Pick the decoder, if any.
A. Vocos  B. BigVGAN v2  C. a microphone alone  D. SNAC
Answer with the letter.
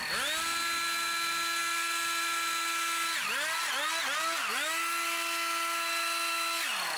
C